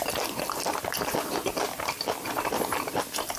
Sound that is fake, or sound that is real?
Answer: real